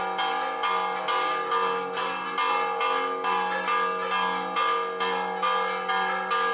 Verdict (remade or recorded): recorded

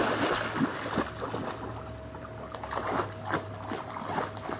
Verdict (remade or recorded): recorded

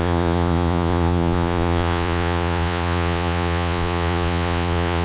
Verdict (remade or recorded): remade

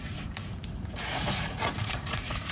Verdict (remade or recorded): remade